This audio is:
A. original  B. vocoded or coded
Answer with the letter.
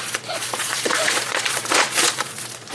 B